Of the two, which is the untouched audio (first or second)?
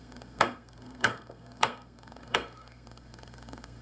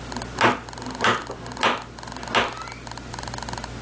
second